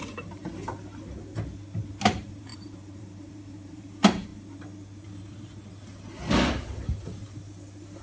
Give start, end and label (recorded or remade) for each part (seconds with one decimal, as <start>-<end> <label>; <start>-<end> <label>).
0.0-0.4 remade; 0.4-2.1 recorded; 2.1-4.3 remade; 4.3-8.0 recorded